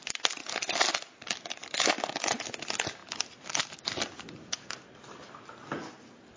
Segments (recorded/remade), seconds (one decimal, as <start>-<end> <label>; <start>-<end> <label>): 0.0-6.4 recorded